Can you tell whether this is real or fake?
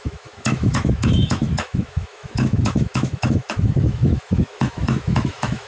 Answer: fake